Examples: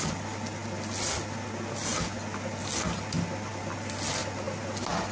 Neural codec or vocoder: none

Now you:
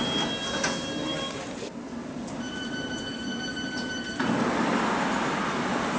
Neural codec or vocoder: none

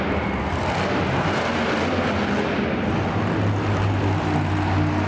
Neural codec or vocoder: none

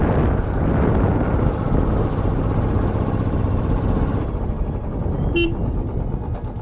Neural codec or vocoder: none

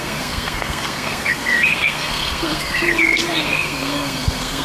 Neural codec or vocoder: codec, SNAC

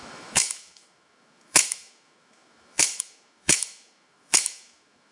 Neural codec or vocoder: autoencoder, DAC-VAE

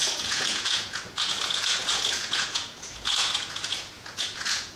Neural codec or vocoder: vocoder, Vocos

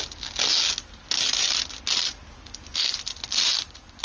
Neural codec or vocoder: none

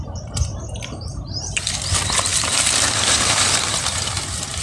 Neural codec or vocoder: none